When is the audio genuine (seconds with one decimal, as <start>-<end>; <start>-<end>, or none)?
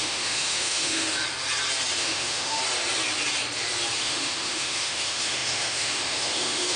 1.2-2.0; 2.6-4.0